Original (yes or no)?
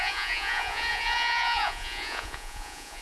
no